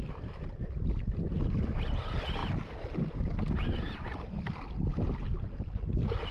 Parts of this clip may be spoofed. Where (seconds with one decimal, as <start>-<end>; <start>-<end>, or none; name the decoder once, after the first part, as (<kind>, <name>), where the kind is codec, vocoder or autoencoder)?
none